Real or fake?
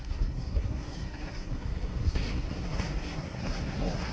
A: fake